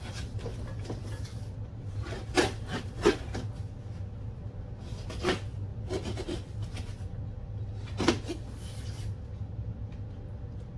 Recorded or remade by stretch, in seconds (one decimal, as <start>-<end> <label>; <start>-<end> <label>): 0.0-10.8 recorded